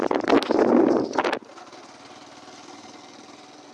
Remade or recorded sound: recorded